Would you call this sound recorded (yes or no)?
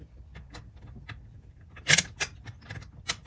yes